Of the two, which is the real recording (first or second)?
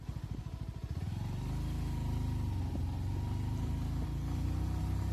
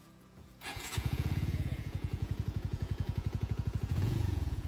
first